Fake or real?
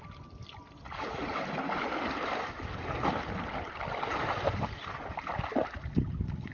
real